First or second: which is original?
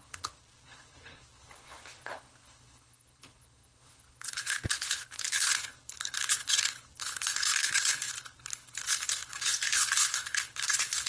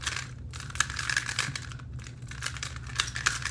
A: second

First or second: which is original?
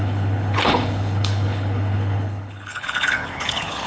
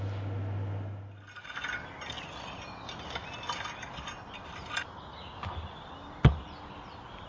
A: second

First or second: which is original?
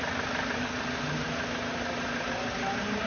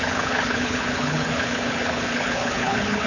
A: first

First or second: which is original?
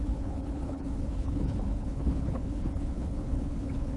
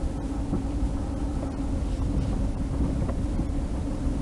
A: second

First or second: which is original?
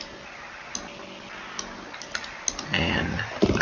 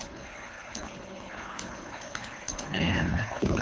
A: first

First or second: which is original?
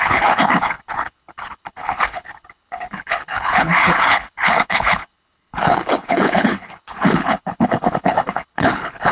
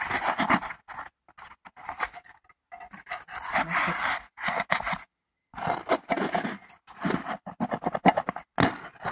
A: second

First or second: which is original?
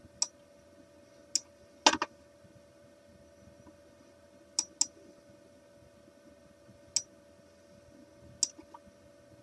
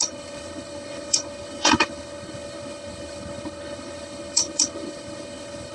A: first